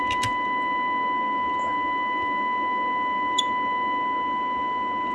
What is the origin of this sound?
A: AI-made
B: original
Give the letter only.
B